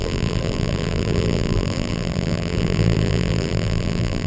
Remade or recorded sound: remade